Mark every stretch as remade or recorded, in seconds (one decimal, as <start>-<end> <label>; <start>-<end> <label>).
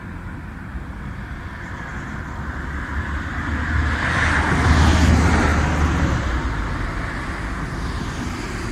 0.0-8.7 recorded